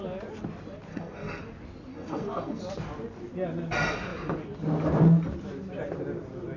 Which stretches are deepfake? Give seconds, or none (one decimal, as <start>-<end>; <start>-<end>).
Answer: 0.9-1.4; 1.9-2.6